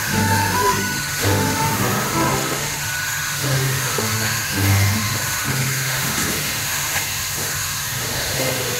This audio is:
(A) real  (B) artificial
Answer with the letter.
B